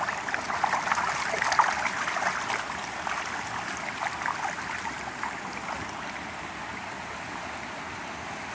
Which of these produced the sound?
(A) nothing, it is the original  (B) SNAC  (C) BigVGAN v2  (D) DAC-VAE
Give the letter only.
A